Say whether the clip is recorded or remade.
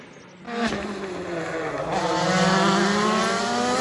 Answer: recorded